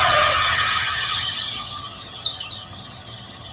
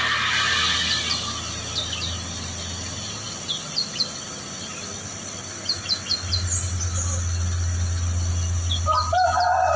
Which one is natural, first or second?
second